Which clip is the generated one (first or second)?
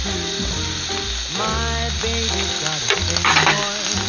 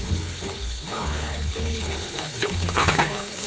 second